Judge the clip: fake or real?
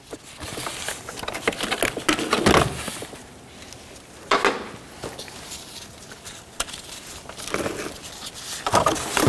real